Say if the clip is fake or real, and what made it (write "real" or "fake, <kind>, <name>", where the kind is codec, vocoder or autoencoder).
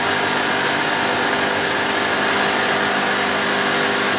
real